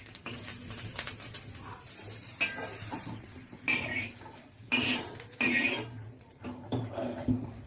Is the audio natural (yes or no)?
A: no